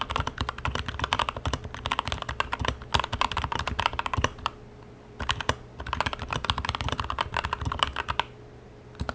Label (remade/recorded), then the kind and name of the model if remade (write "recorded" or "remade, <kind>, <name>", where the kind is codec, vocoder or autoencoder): recorded